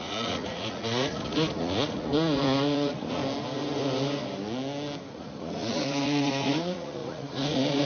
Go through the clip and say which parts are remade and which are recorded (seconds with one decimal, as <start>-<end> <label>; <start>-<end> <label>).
0.0-3.2 remade; 3.2-5.1 recorded; 5.1-7.8 remade